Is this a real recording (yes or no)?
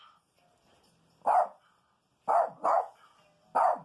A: yes